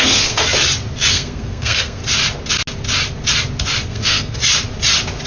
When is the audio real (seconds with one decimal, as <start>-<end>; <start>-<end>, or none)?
0.4-1.1; 2.0-3.9; 4.4-5.3